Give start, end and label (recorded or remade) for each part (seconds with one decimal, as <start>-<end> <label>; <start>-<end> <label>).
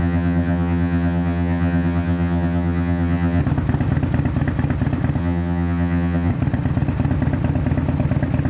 0.0-3.4 remade; 3.4-5.2 recorded; 5.2-6.3 remade; 6.3-8.5 recorded